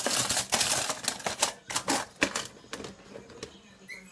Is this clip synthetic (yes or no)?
no